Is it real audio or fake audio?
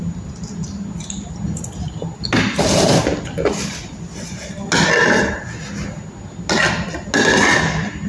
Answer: real